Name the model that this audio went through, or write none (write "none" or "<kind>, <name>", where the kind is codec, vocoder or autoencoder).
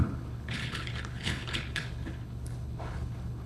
codec, HILCodec